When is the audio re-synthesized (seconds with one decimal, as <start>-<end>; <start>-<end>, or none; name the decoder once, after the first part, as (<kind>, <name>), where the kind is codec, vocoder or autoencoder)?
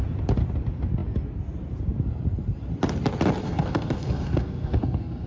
3.4-5.3 (codec, SNAC)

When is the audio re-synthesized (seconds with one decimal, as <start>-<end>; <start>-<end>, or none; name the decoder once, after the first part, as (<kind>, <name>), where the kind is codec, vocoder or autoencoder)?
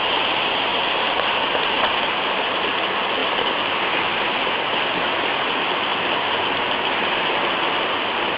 none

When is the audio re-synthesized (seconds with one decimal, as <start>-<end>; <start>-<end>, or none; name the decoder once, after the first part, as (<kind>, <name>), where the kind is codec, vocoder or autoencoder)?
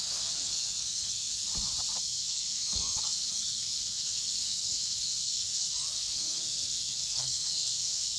0.0-1.5 (codec, SNAC); 2.0-8.2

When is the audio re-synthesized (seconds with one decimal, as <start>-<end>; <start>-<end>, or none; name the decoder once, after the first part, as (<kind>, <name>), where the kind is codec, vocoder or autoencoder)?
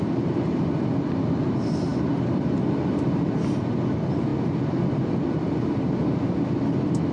none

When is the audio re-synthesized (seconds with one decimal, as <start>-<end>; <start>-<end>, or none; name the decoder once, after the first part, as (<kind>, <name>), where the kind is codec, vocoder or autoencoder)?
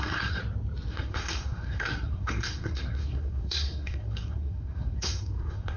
0.0-0.4 (codec, SNAC); 0.9-5.8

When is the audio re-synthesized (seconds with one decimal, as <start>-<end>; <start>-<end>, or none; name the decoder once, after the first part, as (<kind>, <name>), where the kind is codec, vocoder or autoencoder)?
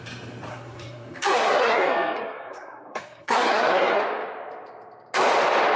0.5-4.0 (codec, SNAC)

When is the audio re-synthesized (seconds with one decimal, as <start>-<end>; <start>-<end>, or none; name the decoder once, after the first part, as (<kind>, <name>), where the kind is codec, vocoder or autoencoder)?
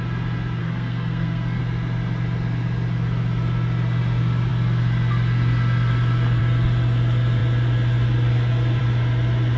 0.6-1.6 (codec, SNAC)